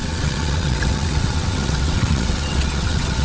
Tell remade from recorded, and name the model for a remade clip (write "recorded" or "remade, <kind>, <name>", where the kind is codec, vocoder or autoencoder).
remade, vocoder, WaveNeXt